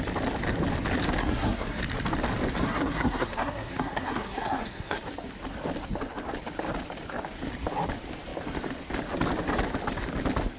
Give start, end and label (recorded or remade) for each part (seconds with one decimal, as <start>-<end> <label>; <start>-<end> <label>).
0.0-1.2 recorded; 1.2-1.8 remade; 1.8-2.6 recorded; 2.6-5.0 remade; 5.0-10.6 recorded